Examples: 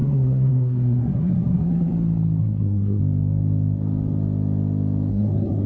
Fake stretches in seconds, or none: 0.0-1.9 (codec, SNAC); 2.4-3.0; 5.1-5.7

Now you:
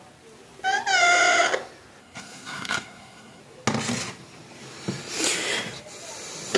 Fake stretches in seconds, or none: 2.0-3.4 (codec, SNAC)

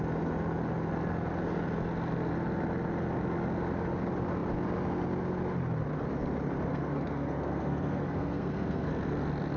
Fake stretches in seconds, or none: 6.7-8.9 (codec, SNAC)

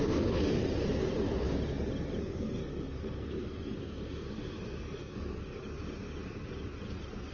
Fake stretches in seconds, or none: 0.0-0.4 (codec, SNAC); 2.2-5.6